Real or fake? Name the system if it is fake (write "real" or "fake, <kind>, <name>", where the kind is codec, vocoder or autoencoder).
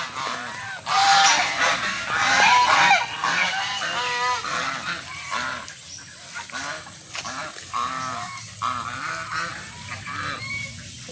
real